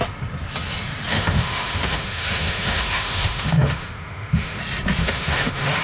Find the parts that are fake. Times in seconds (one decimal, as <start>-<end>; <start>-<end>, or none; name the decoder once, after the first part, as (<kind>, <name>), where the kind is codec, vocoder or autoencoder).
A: 1.1-4.6 (autoencoder, DAC-VAE); 5.0-5.8